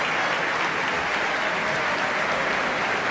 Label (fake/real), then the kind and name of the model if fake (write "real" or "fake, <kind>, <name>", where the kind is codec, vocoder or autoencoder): real